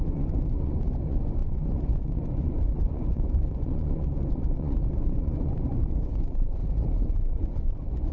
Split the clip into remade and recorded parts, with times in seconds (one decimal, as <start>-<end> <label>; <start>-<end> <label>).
0.0-6.6 remade; 6.6-7.2 recorded; 7.2-8.1 remade